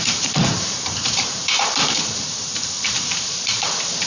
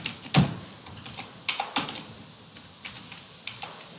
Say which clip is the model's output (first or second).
first